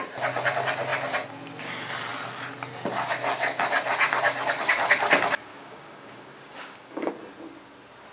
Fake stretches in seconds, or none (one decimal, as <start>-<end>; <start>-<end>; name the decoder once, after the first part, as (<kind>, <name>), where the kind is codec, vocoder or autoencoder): 5.5-7.1 (codec, DAC)